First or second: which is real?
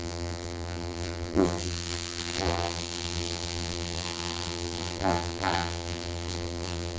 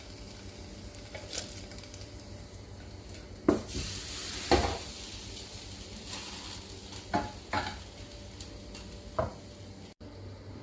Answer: second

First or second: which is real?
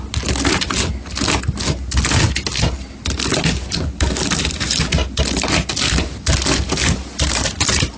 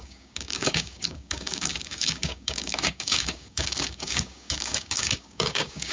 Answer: first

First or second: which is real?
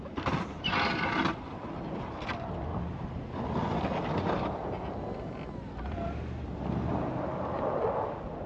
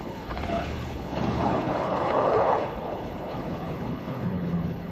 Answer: first